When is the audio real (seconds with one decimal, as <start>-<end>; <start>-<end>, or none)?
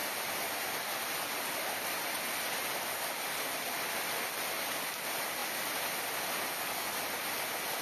0.0-7.8